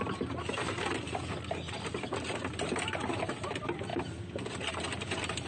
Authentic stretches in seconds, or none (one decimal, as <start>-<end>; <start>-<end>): 0.0-5.5